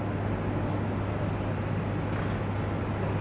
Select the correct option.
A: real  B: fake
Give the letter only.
A